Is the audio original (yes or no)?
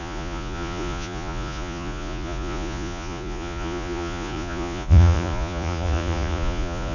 no